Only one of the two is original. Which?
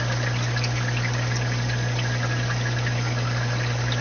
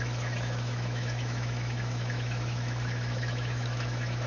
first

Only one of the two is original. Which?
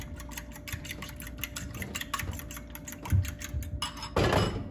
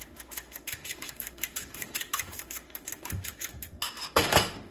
first